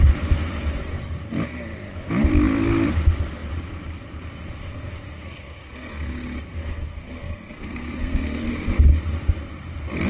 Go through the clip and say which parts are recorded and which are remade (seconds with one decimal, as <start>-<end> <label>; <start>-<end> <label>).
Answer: 0.0-5.2 recorded; 5.2-6.0 remade; 6.0-6.5 recorded; 6.5-8.5 remade; 8.5-10.1 recorded